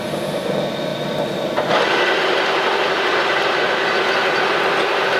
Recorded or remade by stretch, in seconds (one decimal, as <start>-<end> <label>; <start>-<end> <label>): 0.0-5.2 recorded